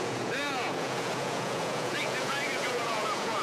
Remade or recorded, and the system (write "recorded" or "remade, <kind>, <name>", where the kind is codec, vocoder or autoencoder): remade, vocoder, Vocos